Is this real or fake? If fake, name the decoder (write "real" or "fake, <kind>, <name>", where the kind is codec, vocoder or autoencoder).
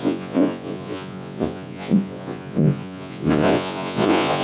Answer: fake, vocoder, Vocos